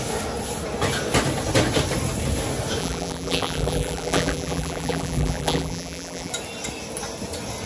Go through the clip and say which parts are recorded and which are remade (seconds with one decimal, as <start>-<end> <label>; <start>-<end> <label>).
0.0-2.8 recorded; 2.8-6.3 remade; 6.3-7.7 recorded